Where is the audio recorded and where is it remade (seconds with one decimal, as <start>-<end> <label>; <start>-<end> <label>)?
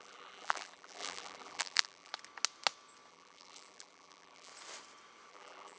0.0-2.1 remade; 2.1-3.1 recorded; 3.1-4.5 remade; 4.5-5.3 recorded; 5.3-5.8 remade